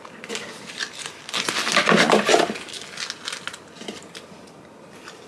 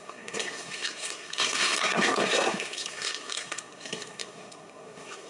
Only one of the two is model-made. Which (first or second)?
second